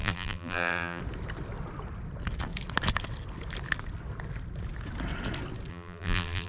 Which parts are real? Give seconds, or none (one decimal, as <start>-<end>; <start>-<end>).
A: 1.0-5.7

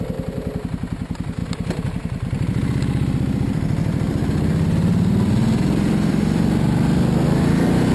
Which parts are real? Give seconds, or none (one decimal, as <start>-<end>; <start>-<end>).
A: 0.0-1.4; 6.1-7.9

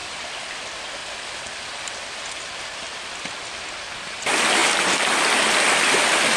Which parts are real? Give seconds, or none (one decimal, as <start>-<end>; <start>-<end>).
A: 0.5-1.0; 3.3-6.4

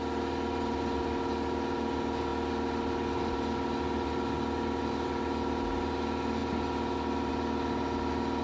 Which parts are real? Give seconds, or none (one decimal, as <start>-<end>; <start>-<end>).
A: 0.0-8.4

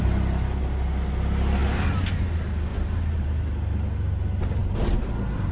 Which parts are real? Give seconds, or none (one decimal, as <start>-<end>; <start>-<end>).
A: 0.0-2.7; 3.5-5.5